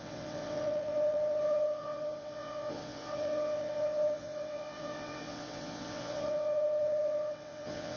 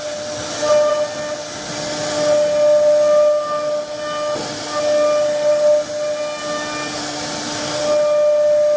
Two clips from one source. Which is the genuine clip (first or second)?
second